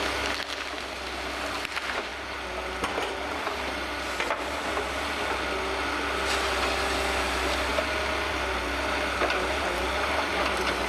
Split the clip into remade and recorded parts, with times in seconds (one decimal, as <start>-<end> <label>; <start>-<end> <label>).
0.0-10.9 recorded